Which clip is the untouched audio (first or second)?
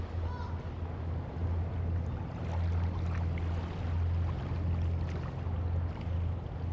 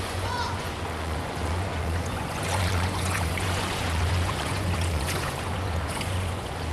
first